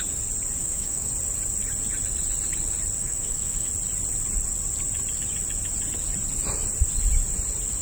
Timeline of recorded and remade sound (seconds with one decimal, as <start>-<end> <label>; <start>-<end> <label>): 0.0-0.6 recorded; 0.6-1.1 remade; 1.1-3.0 recorded; 3.0-3.7 remade; 3.7-7.8 recorded